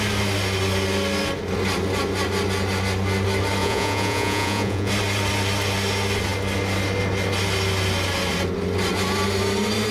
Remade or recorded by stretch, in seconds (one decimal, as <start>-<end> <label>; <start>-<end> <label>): 0.0-3.6 recorded; 3.6-4.9 remade; 4.9-9.9 recorded